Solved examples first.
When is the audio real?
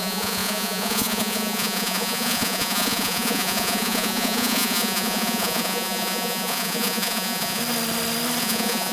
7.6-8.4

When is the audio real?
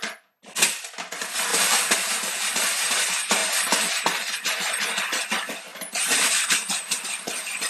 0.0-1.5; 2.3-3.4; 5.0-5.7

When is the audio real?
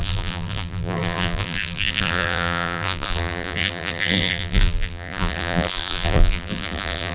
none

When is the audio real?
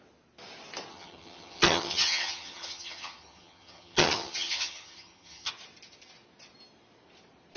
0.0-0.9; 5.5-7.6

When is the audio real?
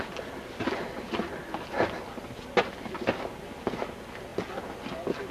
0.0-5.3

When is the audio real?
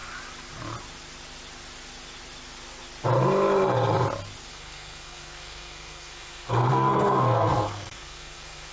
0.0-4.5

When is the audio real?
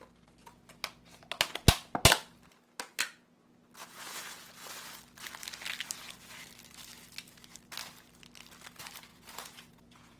0.0-3.8; 4.5-9.1